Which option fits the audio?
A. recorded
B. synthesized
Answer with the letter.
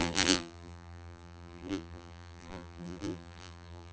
B